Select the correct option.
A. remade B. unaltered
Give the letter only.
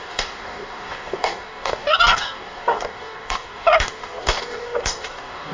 A